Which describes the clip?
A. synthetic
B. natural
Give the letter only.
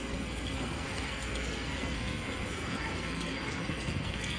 A